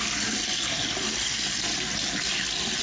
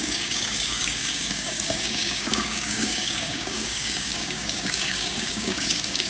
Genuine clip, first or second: first